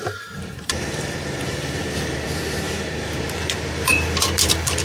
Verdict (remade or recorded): remade